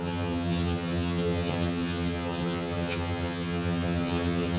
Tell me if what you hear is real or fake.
fake